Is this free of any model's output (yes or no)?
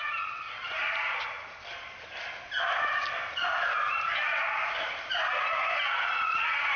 yes